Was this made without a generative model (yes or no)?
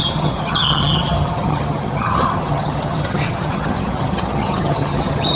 no